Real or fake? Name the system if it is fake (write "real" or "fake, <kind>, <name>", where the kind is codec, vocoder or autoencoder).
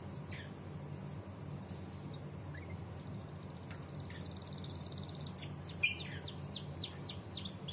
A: real